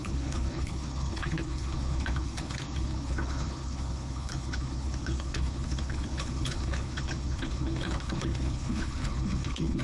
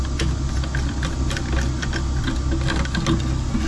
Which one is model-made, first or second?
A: first